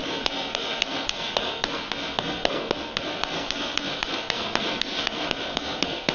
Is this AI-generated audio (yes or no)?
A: yes